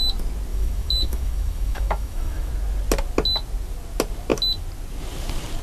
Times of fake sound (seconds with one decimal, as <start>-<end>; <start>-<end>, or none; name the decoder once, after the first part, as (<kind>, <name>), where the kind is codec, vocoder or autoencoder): 0.5-2.5 (autoencoder, DAC-VAE)